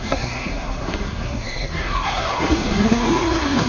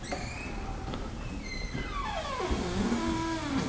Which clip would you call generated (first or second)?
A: first